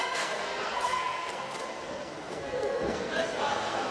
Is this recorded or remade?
remade